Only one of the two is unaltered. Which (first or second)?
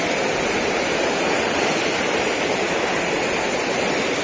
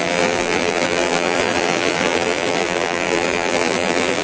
first